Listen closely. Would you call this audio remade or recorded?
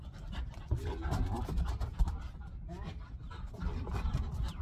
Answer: recorded